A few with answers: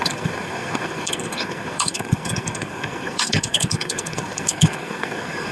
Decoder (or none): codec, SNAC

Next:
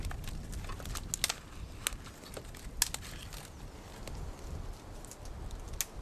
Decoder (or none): none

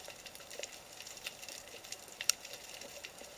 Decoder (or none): vocoder, BigVGAN v2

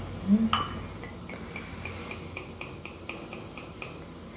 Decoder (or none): none